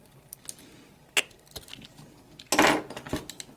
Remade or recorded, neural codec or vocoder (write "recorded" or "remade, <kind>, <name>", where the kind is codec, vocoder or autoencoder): recorded